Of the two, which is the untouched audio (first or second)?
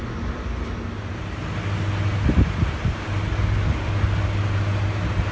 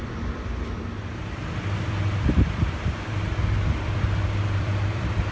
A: first